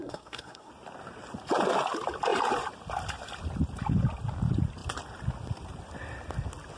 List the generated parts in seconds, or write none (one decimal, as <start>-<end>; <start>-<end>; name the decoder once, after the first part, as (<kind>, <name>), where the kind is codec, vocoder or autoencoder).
0.0-0.7 (codec, SNAC)

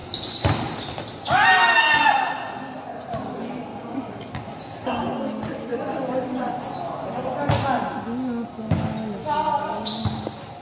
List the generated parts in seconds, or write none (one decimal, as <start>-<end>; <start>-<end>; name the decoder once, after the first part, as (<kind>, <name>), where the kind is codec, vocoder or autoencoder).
3.7-4.3 (codec, DAC); 9.2-9.9

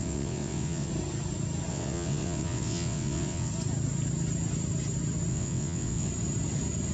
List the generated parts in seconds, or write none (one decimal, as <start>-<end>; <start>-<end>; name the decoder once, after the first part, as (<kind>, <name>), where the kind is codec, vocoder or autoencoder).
0.0-0.9 (vocoder, WaveNeXt); 1.7-3.5; 5.3-6.1

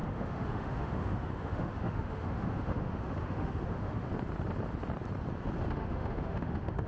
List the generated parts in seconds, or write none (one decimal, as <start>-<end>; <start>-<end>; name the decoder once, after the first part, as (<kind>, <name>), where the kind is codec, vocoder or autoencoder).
0.0-4.1 (autoencoder, DAC-VAE); 5.7-6.9